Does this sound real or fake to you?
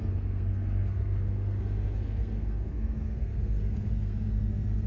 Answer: fake